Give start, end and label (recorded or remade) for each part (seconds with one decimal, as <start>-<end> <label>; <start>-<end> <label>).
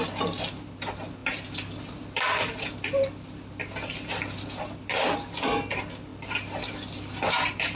0.0-1.2 recorded; 1.2-4.2 remade; 4.2-6.1 recorded; 6.1-7.8 remade